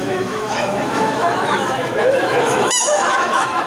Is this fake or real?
fake